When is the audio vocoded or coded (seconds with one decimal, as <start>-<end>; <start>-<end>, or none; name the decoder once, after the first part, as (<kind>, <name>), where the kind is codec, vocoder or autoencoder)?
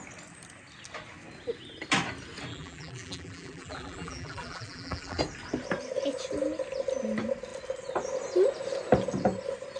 2.5-5.2 (vocoder, BigVGAN v2)